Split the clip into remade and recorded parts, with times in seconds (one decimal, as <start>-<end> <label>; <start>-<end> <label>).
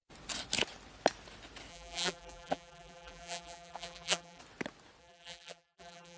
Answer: 0.0-1.7 recorded; 1.7-4.4 remade; 4.4-5.0 recorded; 5.0-6.2 remade